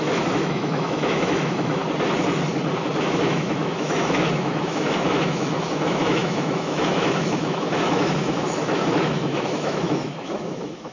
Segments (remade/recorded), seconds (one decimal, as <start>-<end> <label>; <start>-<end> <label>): 0.0-1.8 remade; 1.8-3.0 recorded; 3.0-10.9 remade